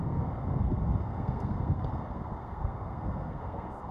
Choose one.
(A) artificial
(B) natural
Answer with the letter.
A